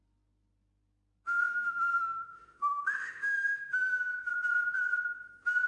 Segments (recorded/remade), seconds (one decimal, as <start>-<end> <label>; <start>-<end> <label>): 0.0-1.5 recorded; 1.5-4.3 remade; 4.3-5.7 recorded